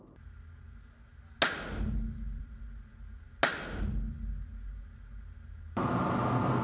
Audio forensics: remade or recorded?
recorded